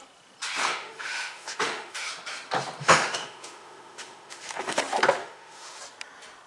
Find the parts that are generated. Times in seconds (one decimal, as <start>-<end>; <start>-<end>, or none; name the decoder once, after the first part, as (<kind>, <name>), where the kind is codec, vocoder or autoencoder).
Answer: 0.6-2.1 (autoencoder, DAC-VAE); 2.8-4.8; 5.2-5.8